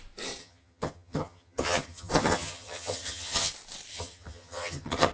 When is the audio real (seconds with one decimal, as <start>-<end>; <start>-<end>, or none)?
0.0-0.4; 3.5-3.9